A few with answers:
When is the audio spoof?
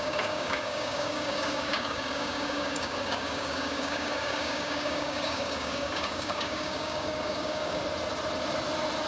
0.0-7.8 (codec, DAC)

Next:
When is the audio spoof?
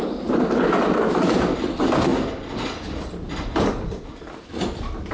none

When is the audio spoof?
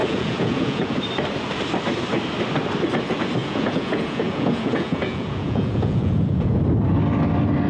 0.0-1.0 (vocoder, Vocos); 3.4-6.6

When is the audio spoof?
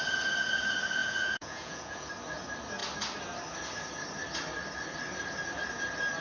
1.0-2.1 (vocoder, Vocos)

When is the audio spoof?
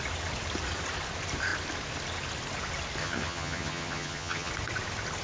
3.0-4.5 (vocoder, HiFi-GAN)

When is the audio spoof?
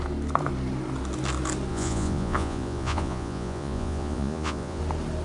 1.7-4.8 (vocoder, Vocos)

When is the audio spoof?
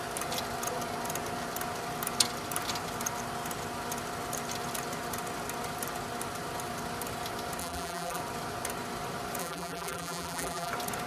7.6-8.2 (vocoder, BigVGAN v2); 9.4-10.7